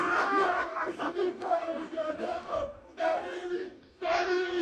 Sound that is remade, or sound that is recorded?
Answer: remade